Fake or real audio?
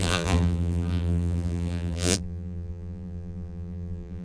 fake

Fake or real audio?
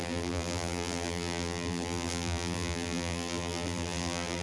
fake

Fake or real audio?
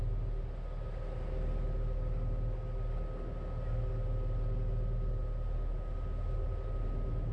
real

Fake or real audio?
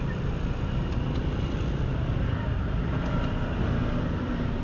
real